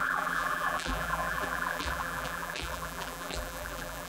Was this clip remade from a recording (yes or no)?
yes